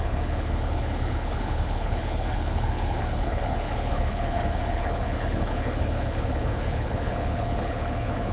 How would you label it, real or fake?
fake